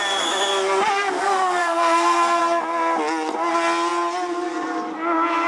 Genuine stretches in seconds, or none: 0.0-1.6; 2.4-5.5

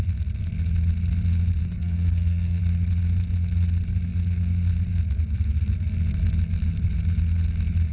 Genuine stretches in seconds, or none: 0.0-1.6; 2.6-7.9

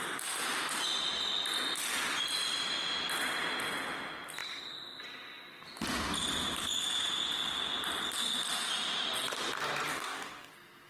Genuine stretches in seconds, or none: 0.0-9.9; 10.5-10.9

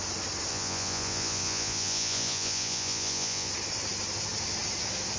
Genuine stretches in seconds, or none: 0.0-0.5; 3.5-5.2

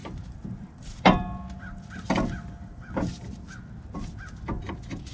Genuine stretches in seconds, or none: 3.1-5.1

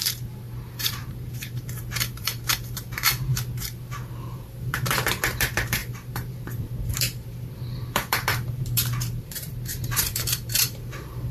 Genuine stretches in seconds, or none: none

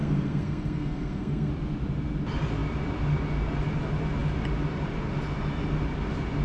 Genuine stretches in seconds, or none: 1.5-6.4

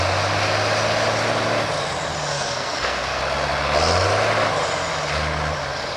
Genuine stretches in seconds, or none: 0.0-2.3; 3.2-6.0